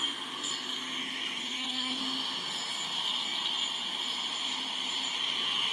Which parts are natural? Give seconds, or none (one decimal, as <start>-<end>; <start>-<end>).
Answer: 0.0-1.4; 2.0-5.7